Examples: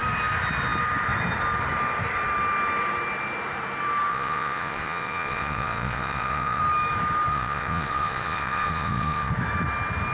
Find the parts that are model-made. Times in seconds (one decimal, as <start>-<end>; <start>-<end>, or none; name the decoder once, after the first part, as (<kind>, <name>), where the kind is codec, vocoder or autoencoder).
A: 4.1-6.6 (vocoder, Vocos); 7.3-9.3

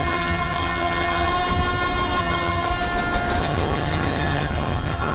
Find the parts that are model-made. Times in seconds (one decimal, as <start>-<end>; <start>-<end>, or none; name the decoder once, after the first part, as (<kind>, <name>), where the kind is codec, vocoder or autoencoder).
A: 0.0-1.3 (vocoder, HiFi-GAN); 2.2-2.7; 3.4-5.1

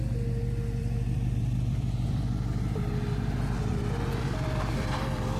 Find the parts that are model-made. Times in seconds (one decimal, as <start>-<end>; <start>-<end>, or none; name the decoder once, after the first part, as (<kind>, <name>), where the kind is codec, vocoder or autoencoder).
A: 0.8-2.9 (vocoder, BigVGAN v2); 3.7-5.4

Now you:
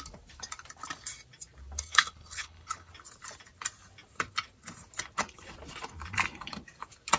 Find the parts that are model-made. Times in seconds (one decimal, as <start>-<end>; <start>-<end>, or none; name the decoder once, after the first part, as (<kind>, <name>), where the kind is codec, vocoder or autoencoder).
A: 1.9-2.9 (codec, HILCodec)